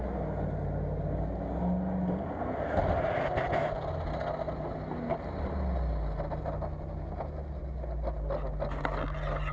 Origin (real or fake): real